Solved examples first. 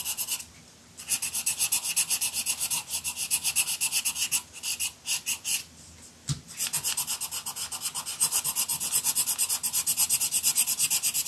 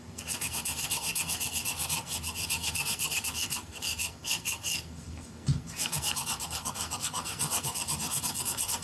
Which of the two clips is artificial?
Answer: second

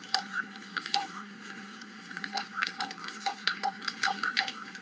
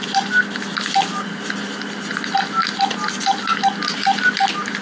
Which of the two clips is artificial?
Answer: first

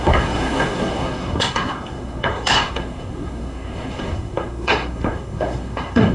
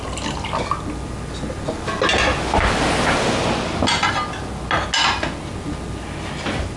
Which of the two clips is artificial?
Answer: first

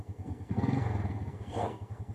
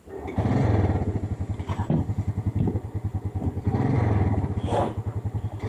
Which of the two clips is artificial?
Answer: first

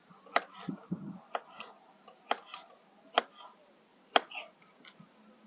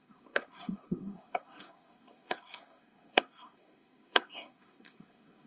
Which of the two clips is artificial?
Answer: second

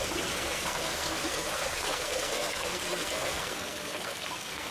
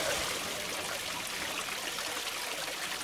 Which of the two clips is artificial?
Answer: first